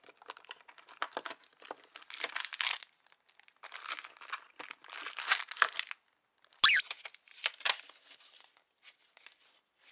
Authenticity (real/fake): real